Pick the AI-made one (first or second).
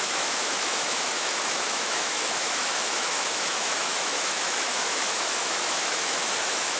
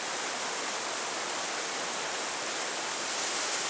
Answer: first